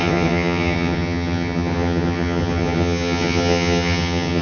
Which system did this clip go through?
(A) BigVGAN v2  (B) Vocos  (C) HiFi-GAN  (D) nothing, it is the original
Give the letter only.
C